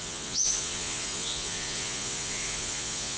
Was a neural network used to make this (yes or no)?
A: yes